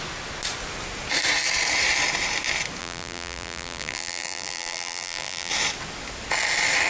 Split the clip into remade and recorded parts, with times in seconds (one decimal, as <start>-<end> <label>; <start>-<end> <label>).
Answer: 0.0-2.8 recorded; 2.8-5.5 remade; 5.5-6.9 recorded

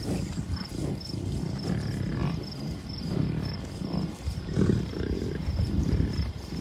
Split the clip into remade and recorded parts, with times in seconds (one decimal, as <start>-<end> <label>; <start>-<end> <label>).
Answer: 0.0-6.6 recorded

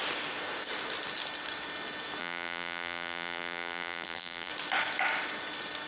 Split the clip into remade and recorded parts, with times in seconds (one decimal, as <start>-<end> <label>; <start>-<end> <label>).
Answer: 0.0-2.2 recorded; 2.2-4.5 remade; 4.5-5.9 recorded

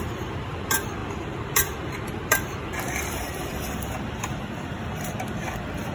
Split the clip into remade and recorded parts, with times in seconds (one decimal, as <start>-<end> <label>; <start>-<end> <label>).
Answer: 0.0-5.9 remade